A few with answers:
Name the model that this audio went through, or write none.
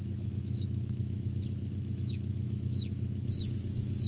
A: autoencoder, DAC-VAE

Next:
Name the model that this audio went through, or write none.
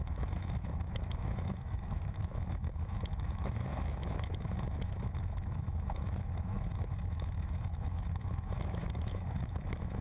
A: autoencoder, DAC-VAE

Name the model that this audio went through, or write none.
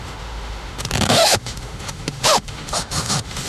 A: autoencoder, DAC-VAE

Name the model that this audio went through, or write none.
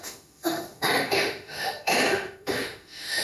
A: autoencoder, DAC-VAE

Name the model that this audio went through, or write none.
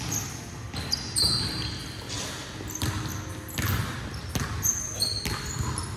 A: none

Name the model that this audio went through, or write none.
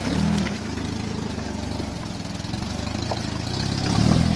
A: none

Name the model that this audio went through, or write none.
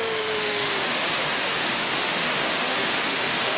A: autoencoder, DAC-VAE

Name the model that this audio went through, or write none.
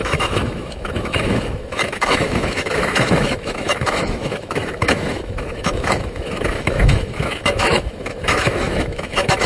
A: autoencoder, DAC-VAE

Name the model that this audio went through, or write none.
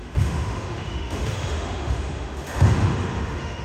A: autoencoder, DAC-VAE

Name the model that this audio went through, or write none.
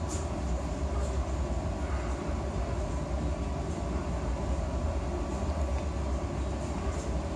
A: none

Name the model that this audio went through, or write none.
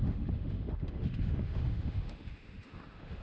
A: autoencoder, DAC-VAE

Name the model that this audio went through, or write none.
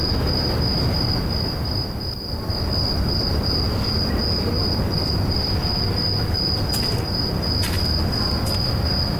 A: none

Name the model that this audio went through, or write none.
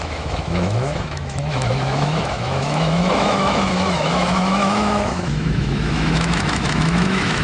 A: autoencoder, DAC-VAE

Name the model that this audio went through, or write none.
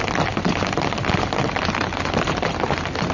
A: none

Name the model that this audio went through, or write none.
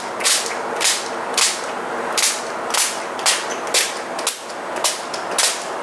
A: none